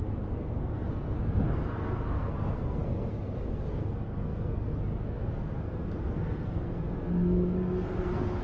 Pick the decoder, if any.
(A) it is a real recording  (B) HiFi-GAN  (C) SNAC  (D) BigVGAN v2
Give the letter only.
C